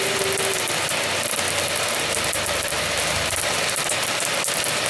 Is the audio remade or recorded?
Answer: recorded